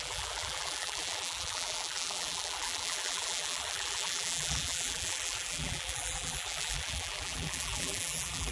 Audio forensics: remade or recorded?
remade